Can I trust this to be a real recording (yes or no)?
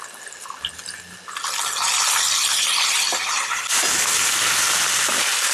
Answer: yes